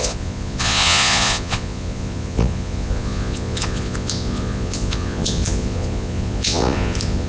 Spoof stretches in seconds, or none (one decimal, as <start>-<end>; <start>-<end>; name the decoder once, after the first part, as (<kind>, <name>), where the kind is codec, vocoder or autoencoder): 0.0-7.3 (vocoder, Vocos)